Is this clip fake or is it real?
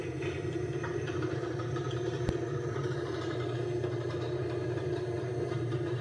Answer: fake